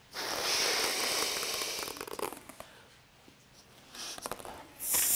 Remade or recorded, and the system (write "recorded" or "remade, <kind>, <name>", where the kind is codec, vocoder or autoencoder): recorded